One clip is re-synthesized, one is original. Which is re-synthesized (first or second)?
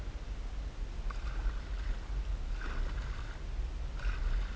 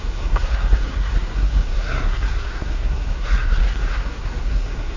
second